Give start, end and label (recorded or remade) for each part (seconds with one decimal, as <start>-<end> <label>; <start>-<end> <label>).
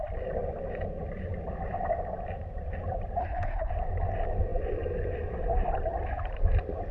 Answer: 0.0-3.2 recorded; 3.2-3.7 remade; 3.7-6.9 recorded